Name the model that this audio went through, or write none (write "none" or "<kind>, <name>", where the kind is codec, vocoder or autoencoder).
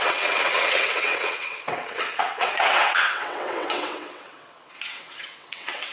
vocoder, WaveNeXt